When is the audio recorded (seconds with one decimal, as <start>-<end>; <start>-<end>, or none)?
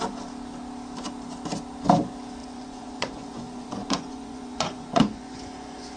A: 0.0-2.4